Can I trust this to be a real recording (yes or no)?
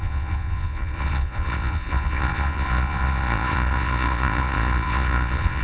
no